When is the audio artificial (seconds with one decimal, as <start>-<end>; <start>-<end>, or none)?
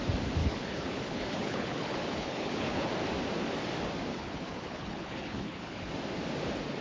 0.4-2.9; 4.1-5.9